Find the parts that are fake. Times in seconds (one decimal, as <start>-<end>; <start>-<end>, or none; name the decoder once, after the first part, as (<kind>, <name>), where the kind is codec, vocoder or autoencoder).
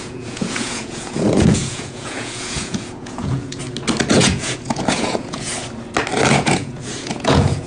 0.0-3.6 (vocoder, Vocos); 4.1-5.5; 6.3-7.7